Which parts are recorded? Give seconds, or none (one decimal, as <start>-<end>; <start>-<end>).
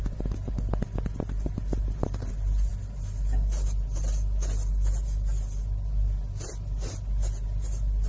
0.0-8.1